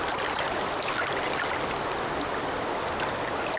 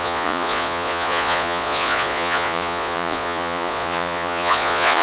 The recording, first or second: first